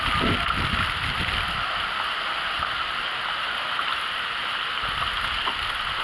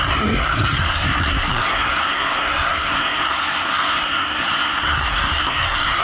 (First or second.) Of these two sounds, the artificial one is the second